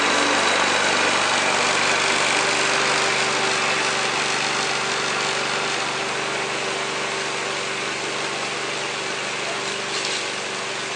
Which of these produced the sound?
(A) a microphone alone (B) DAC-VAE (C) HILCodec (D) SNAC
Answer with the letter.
A